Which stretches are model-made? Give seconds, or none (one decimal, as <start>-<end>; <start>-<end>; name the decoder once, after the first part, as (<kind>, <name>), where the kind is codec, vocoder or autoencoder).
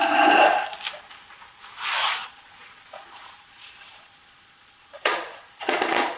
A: 2.2-6.2 (vocoder, Vocos)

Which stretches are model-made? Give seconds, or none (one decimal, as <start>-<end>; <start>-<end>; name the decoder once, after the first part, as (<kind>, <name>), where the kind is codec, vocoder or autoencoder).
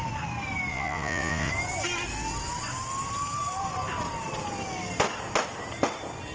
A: 0.7-1.5 (vocoder, Vocos)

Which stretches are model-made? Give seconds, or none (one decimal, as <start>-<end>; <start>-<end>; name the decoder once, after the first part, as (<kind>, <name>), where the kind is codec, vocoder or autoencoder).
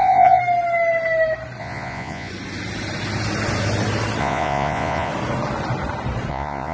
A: 0.0-0.4 (vocoder, Vocos); 1.6-2.3; 4.2-5.1; 6.3-6.7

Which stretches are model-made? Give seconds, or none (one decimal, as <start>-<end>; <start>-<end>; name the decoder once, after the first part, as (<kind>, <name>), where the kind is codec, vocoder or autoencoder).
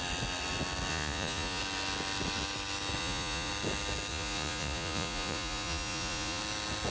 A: 0.9-1.6 (vocoder, Vocos); 3.0-3.5; 4.1-6.4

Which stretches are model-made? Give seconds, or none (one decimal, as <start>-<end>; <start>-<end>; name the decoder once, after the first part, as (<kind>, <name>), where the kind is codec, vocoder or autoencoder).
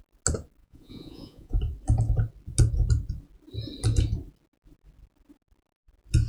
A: 0.6-1.6 (vocoder, Vocos)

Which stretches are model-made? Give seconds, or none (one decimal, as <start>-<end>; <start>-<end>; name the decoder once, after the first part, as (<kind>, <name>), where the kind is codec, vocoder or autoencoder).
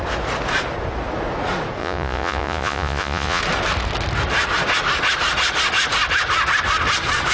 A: 1.8-3.4 (vocoder, Vocos)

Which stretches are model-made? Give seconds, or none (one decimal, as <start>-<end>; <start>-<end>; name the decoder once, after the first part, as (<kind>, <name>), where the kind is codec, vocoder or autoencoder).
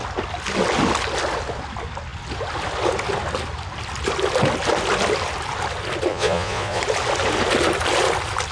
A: 6.1-6.8 (vocoder, Vocos)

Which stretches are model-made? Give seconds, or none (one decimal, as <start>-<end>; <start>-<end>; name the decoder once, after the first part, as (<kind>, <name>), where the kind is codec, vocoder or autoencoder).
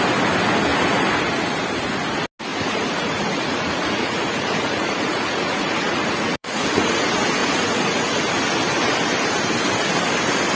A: 2.5-6.9 (vocoder, Vocos); 7.4-8.2